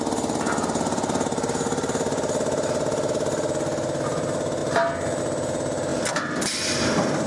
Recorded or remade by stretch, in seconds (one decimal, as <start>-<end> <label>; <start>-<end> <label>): 0.0-7.3 recorded